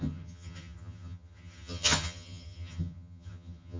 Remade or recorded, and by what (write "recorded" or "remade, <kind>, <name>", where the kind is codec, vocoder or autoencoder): remade, vocoder, HiFi-GAN